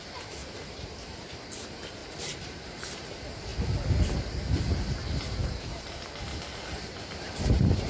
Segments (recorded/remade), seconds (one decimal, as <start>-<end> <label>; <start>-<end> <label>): 0.0-0.4 recorded; 0.4-1.5 remade; 1.5-2.0 recorded; 2.0-2.8 remade; 2.8-5.4 recorded; 5.4-6.0 remade; 6.0-7.9 recorded